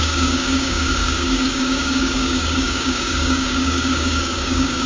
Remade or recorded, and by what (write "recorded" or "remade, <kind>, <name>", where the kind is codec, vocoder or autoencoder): remade, codec, DAC